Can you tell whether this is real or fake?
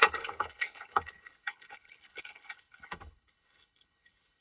fake